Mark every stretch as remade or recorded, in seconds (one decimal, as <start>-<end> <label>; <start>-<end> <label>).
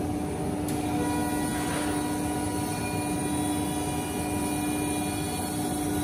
0.0-6.0 recorded